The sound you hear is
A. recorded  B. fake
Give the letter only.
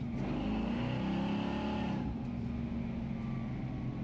A